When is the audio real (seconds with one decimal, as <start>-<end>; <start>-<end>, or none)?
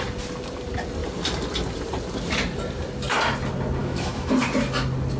0.0-3.8; 4.3-5.2